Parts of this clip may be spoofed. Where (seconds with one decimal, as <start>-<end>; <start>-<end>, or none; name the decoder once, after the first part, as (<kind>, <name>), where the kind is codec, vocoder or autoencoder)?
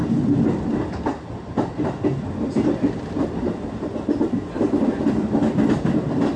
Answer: none